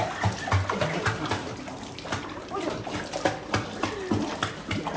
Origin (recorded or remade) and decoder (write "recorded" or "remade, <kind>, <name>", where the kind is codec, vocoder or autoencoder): recorded